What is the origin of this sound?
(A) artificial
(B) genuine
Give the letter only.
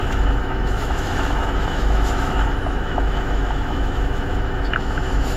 A